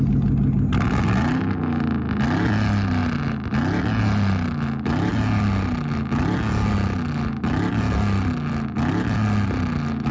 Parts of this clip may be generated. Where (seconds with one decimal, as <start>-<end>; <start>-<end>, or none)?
none

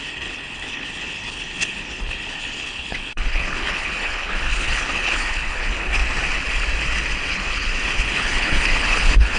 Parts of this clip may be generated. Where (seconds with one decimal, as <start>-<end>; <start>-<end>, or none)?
0.0-6.0; 7.3-9.4

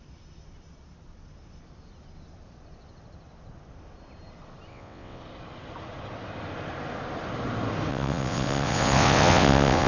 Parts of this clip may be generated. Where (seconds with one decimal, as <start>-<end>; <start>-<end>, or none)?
4.7-5.2; 7.9-9.9

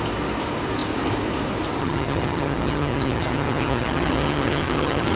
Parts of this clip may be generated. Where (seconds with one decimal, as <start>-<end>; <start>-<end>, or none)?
1.8-5.2

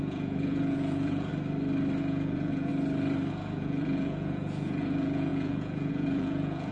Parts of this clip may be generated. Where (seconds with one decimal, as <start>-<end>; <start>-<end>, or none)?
0.0-1.3; 2.0-2.7; 3.3-6.7

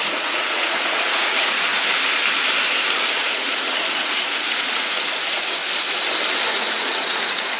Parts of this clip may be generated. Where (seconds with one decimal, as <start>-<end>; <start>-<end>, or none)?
0.0-1.7; 3.3-5.6; 6.5-7.6

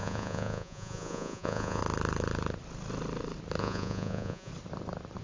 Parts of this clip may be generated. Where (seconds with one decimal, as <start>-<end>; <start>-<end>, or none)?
0.0-1.8; 3.6-4.5